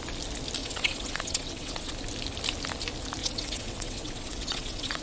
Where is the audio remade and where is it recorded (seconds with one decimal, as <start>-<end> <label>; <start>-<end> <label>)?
0.0-0.6 recorded; 0.6-1.9 remade; 1.9-3.2 recorded; 3.2-5.0 remade